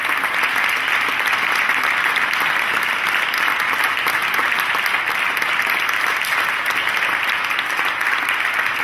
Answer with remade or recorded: recorded